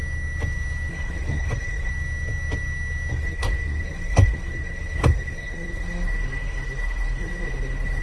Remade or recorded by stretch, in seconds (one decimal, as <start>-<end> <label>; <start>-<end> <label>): 0.0-0.9 recorded; 0.9-1.9 remade; 1.9-3.1 recorded; 3.1-8.0 remade